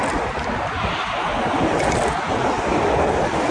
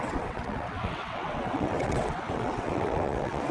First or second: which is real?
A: first